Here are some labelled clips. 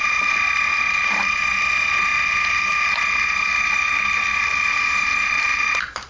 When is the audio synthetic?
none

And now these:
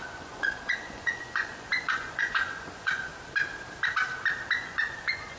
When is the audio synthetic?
0.0-3.1 (vocoder, Vocos); 4.6-5.4

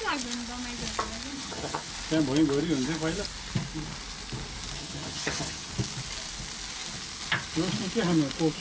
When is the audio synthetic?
1.3-1.9 (vocoder, HiFi-GAN); 4.8-5.7

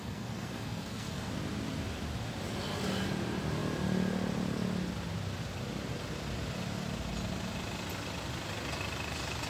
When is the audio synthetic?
0.0-1.3 (codec, SNAC)

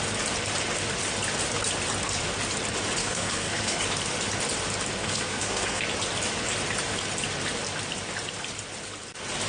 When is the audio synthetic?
3.0-3.8 (codec, SNAC); 5.0-5.8